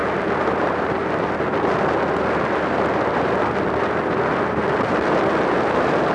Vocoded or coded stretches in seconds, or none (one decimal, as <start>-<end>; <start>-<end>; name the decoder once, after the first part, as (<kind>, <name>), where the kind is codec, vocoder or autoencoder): 0.0-1.0 (vocoder, BigVGAN v2); 4.7-6.1